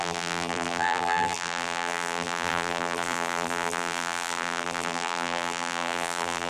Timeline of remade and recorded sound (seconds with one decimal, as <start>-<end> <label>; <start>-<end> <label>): 0.0-6.5 remade